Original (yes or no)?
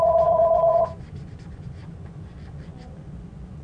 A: no